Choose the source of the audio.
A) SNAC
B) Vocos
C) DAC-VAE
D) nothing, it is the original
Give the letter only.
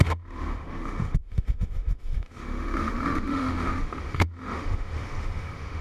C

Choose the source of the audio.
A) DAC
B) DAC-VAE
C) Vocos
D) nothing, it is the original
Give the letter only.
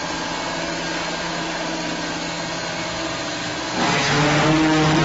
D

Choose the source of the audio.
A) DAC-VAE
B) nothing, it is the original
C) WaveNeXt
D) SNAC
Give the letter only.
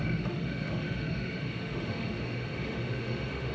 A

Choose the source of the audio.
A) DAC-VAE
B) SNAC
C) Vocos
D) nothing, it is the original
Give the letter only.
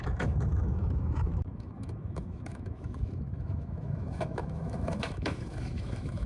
A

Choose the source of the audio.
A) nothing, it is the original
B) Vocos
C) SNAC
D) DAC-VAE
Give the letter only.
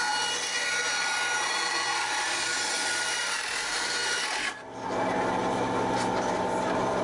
A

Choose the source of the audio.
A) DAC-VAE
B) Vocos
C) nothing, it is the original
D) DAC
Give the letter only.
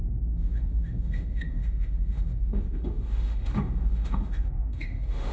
A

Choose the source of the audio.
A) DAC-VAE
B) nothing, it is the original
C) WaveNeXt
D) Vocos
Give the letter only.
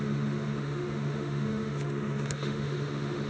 A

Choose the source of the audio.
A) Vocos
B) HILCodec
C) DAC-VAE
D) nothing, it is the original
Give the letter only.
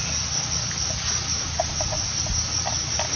D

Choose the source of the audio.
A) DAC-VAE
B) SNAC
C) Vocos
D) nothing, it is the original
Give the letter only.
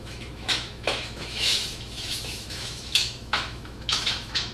A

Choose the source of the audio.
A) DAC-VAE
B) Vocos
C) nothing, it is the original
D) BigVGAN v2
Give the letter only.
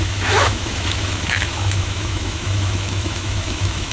A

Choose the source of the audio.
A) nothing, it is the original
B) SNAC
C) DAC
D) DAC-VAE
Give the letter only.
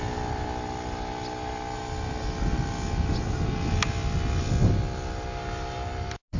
A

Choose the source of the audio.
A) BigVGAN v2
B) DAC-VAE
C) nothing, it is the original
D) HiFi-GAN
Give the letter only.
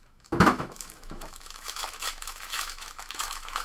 B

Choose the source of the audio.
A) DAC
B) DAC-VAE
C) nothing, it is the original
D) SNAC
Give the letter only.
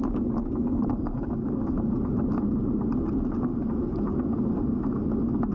C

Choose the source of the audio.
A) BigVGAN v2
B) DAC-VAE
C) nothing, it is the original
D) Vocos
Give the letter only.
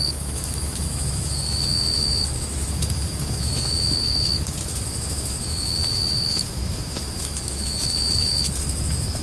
B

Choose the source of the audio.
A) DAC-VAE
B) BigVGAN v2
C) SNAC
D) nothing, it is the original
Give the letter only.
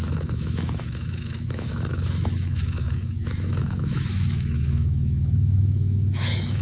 A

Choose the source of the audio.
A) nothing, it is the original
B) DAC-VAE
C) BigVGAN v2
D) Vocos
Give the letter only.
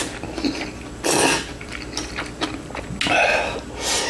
A